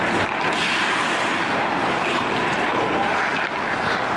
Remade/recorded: recorded